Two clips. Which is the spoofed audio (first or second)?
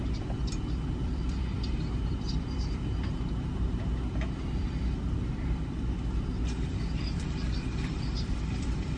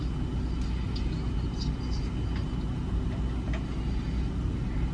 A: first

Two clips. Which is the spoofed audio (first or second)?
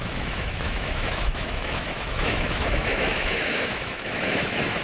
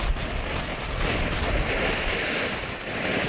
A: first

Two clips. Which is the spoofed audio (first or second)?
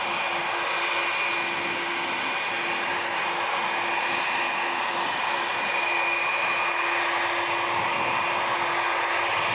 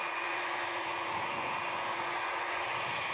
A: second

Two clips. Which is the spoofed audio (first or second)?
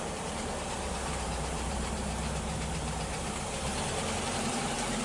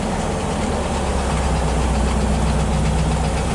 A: first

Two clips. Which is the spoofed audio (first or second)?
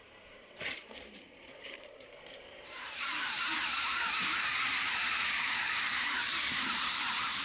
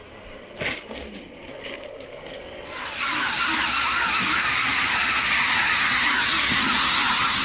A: first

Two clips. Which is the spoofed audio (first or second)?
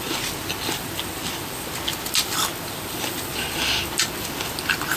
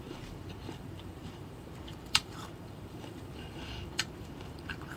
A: second